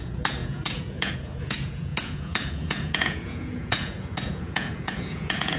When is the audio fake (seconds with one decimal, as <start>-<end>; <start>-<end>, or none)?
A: 0.0-5.6